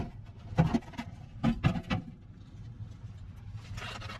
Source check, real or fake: real